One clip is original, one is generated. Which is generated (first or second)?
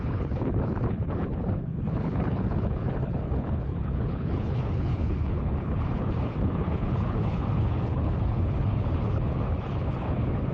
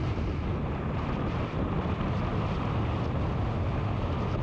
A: first